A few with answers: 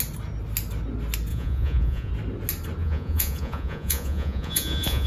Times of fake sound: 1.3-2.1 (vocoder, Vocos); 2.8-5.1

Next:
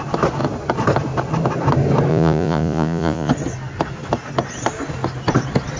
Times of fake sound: 2.1-3.3 (vocoder, Vocos)

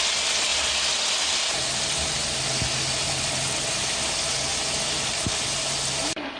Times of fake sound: none

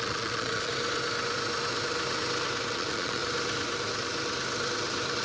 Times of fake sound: 0.0-0.7 (vocoder, Vocos); 2.7-3.2

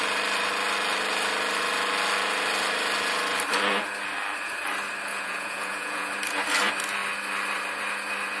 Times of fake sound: 5.1-6.1 (vocoder, Vocos)

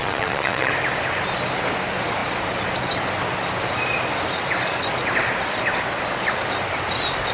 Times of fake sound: 0.0-0.7 (vocoder, Vocos)